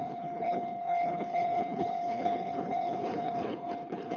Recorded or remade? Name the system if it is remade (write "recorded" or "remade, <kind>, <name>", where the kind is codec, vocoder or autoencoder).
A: remade, codec, HILCodec